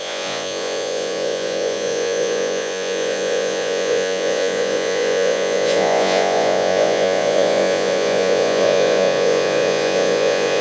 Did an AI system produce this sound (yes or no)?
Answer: yes